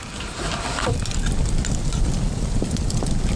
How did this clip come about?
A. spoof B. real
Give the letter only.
A